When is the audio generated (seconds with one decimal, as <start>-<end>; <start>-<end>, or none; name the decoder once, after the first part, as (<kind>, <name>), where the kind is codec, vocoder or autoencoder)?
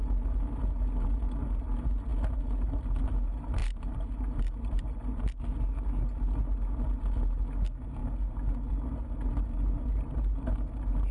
3.6-5.4 (vocoder, BigVGAN v2)